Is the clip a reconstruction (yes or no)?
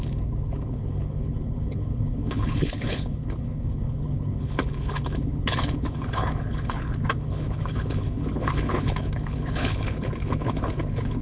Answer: yes